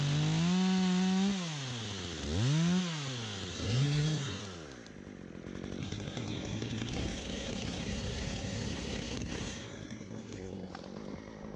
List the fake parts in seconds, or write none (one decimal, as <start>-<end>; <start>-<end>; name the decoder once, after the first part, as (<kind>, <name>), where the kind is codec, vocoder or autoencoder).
3.5-4.4 (codec, SNAC); 5.8-10.7

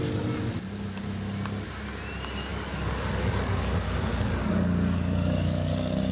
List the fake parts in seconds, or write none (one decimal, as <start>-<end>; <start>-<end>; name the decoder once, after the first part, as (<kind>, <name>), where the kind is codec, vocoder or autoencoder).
2.5-6.1 (codec, DAC)

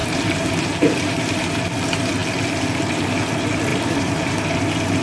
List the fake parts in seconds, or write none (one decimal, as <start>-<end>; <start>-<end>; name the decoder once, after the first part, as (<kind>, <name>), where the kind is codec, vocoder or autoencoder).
0.0-1.6 (vocoder, BigVGAN v2); 3.7-4.6

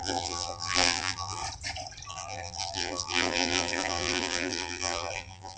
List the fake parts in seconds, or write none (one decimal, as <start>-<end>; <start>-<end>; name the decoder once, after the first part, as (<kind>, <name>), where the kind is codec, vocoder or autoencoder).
0.0-1.4 (vocoder, BigVGAN v2); 2.1-5.6

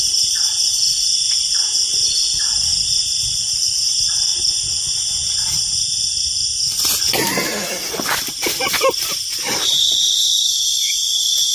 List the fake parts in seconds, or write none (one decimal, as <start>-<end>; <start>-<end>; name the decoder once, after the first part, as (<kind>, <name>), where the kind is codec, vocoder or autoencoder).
0.0-4.3 (vocoder, BigVGAN v2); 9.6-11.5